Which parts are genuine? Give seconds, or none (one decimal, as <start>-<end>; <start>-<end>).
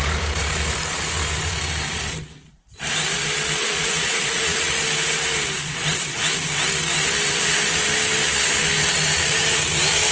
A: 0.0-3.6; 4.7-10.1